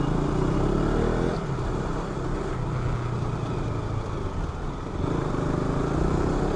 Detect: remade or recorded recorded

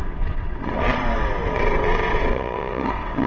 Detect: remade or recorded remade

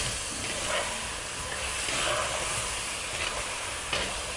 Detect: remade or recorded recorded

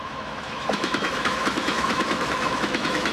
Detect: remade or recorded remade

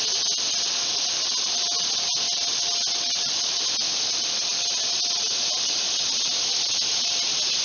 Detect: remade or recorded recorded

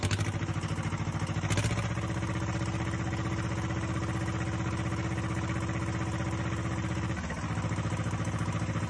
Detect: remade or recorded recorded